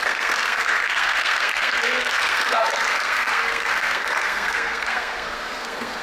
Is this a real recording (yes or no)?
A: no